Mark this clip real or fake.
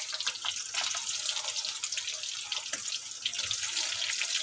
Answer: real